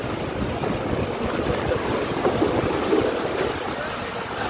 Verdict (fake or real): real